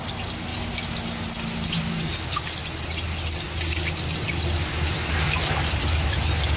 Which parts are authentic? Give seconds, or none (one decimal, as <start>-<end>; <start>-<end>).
0.0-6.6